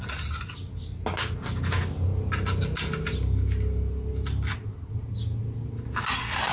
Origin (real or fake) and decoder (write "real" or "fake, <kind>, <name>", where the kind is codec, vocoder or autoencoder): real